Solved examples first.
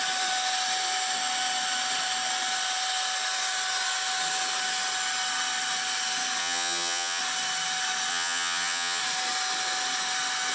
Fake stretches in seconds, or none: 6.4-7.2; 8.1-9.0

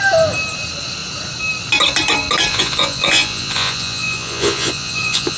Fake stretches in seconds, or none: 2.5-5.4

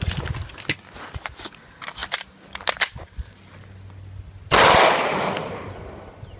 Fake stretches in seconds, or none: none

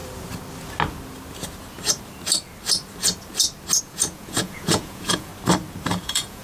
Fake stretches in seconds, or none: 3.8-5.3; 6.0-6.4